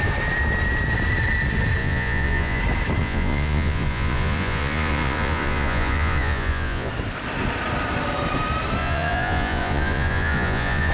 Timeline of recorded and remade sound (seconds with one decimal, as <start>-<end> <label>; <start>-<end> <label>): 0.0-1.8 recorded; 1.8-2.6 remade; 2.6-3.0 recorded; 3.0-6.9 remade; 6.9-8.8 recorded; 8.8-10.9 remade